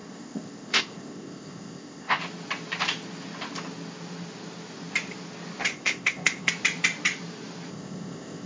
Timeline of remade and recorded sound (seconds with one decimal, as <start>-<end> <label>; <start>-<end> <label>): 0.0-2.2 remade; 2.2-5.7 recorded; 5.7-6.5 remade; 6.5-7.7 recorded; 7.7-8.5 remade